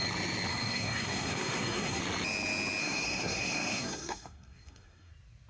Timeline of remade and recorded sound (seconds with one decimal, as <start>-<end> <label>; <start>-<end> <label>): 0.0-0.5 recorded; 0.5-2.0 remade; 2.0-2.8 recorded; 2.8-5.1 remade; 5.1-5.5 recorded